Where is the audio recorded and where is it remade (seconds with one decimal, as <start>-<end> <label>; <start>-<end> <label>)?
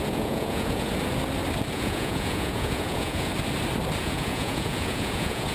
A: 0.0-0.9 remade; 0.9-1.7 recorded; 1.7-3.3 remade; 3.3-4.0 recorded; 4.0-5.5 remade